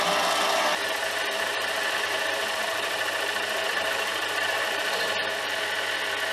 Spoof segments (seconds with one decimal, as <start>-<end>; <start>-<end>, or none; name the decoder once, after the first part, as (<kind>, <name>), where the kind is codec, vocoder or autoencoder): 1.0-4.8 (vocoder, BigVGAN v2)

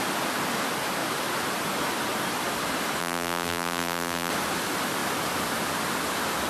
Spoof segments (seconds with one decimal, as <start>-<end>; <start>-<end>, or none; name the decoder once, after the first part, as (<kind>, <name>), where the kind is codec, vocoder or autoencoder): 3.0-4.3 (vocoder, BigVGAN v2)

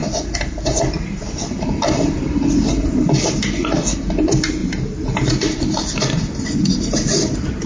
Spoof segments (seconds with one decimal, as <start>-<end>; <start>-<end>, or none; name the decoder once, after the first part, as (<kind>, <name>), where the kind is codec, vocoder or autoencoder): 0.0-4.0 (vocoder, BigVGAN v2)

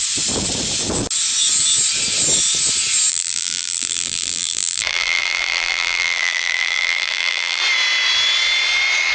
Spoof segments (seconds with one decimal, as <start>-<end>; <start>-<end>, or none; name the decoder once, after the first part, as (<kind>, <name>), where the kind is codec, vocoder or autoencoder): 3.1-7.6 (vocoder, BigVGAN v2)